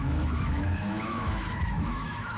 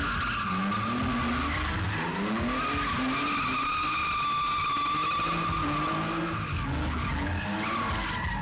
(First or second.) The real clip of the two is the second